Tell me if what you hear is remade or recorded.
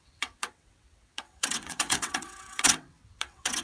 remade